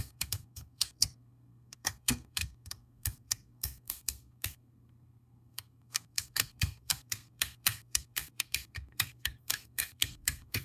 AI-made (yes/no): yes